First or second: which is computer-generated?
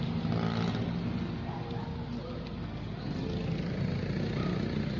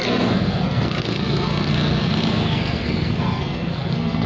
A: second